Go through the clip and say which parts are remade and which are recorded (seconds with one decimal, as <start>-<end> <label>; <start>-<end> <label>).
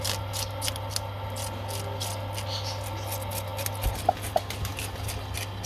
0.0-5.7 recorded